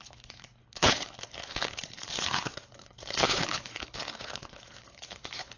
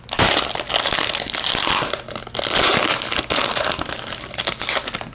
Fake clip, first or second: first